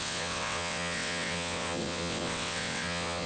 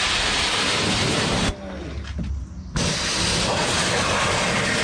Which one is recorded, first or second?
second